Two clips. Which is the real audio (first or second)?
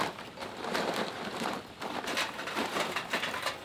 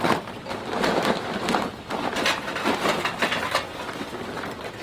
second